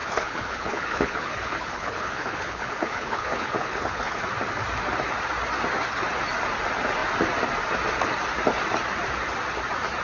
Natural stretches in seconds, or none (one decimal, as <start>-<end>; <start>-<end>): 4.2-10.0